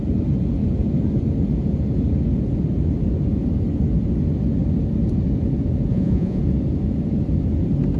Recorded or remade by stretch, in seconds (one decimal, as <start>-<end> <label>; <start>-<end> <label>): 0.0-5.9 recorded; 5.9-6.4 remade; 6.4-8.0 recorded